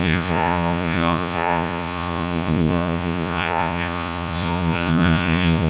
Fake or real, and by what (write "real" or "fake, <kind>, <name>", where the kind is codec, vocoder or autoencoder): fake, vocoder, Vocos